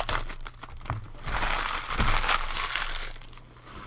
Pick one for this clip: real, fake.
real